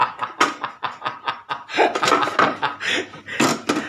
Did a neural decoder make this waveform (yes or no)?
no